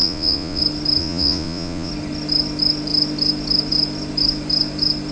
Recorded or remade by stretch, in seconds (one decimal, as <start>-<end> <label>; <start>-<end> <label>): 0.0-0.6 remade; 0.6-1.0 recorded; 1.0-1.9 remade; 1.9-5.1 recorded